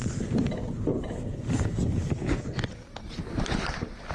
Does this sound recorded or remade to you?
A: remade